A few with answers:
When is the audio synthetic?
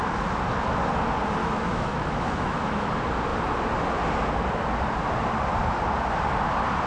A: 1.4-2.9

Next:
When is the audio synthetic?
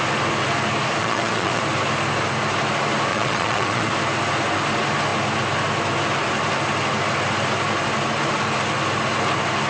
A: 1.0-1.6; 3.1-3.9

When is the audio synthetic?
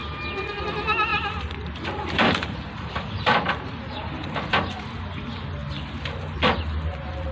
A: 1.1-4.7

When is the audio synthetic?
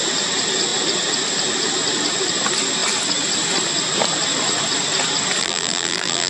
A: 5.4-6.3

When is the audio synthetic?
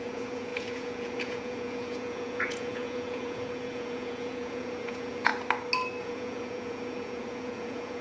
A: 0.0-5.3; 6.0-8.0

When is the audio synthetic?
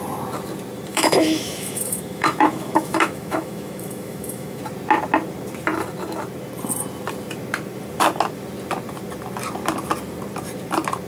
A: 0.9-4.6